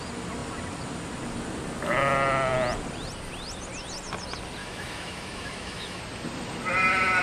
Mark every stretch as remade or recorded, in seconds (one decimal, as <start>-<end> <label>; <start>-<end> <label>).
0.0-4.6 recorded; 4.6-6.0 remade; 6.0-7.2 recorded